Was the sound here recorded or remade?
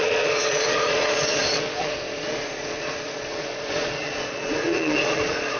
remade